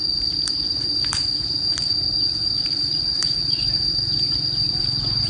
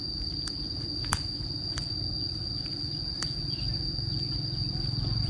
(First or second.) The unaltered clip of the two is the second